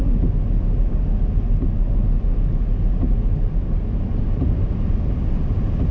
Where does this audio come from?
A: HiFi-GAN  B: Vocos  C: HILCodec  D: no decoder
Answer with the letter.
D